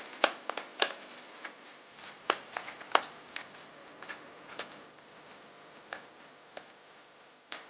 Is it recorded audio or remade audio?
remade